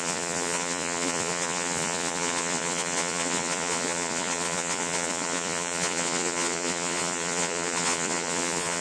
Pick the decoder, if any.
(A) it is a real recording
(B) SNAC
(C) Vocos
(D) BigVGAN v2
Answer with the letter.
C